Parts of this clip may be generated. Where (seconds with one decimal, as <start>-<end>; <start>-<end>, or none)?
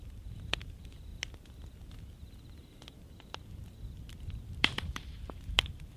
0.0-1.1; 4.6-6.0